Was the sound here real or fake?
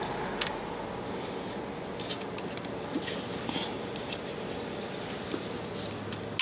real